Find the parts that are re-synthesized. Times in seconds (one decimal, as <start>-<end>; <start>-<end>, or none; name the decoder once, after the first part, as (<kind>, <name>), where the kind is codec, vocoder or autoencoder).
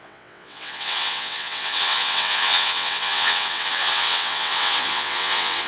0.0-5.7 (vocoder, WaveNeXt)